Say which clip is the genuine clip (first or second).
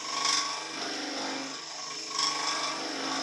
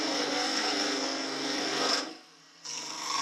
first